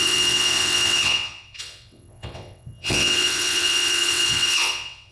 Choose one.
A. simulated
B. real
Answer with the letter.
A